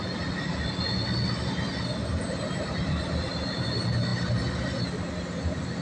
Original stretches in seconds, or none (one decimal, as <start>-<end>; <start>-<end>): 0.0-5.8